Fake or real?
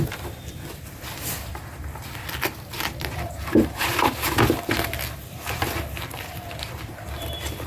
fake